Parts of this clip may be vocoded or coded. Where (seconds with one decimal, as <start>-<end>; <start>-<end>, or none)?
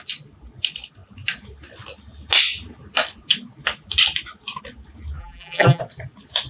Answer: 5.2-5.8